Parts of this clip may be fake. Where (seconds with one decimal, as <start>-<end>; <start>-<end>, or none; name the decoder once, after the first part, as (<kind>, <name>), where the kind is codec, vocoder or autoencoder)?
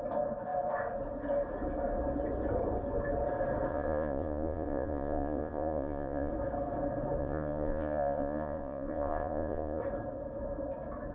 3.7-6.3 (vocoder, Vocos); 7.2-9.8